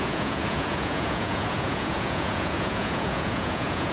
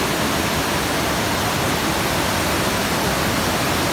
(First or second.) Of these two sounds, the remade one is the first